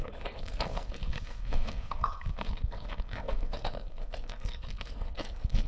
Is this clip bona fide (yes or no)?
no